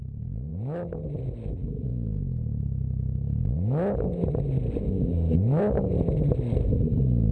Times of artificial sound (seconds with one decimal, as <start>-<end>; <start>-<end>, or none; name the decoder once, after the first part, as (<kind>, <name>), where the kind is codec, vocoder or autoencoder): none